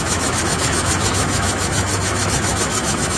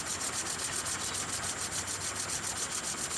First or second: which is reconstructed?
first